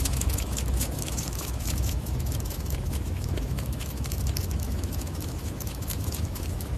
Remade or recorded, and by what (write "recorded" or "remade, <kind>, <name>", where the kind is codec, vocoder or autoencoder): remade, autoencoder, DAC-VAE